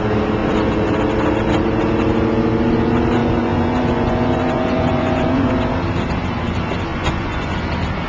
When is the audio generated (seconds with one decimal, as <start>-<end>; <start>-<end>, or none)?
0.4-1.0; 3.2-5.5; 6.9-7.6